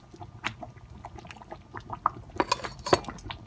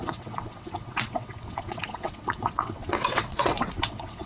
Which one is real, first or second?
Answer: first